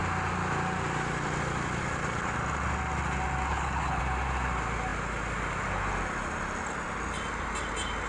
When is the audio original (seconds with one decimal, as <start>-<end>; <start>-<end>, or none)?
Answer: 0.0-3.5; 4.0-8.1